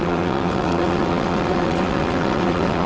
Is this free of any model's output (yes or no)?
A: no